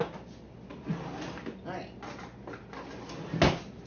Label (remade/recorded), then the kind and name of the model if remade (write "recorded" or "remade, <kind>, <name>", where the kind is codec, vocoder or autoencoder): recorded